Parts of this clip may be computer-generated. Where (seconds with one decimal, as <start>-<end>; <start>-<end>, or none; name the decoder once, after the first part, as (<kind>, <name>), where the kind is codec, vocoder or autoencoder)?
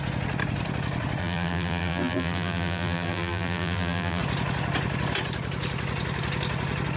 1.2-4.2 (vocoder, BigVGAN v2)